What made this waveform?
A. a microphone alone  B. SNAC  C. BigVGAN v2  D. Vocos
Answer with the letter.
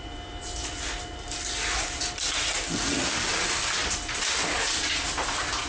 A